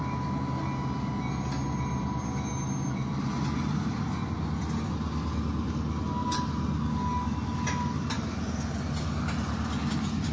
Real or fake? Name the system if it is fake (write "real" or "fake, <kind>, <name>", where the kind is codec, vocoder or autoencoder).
real